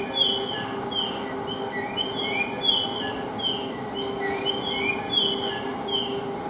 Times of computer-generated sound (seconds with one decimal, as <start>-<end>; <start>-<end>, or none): none